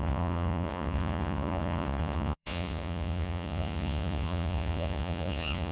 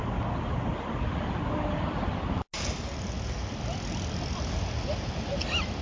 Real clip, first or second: second